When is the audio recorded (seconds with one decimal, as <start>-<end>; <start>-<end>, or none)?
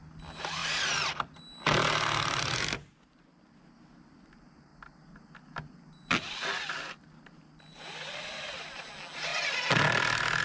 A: 0.0-10.4